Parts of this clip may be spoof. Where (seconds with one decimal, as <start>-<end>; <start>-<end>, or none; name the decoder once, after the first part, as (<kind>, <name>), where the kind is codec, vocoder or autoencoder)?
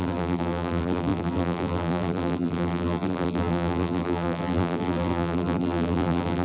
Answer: 0.0-6.4 (vocoder, BigVGAN v2)